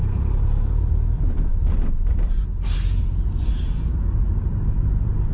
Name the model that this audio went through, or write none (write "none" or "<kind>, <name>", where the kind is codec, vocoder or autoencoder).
vocoder, BigVGAN v2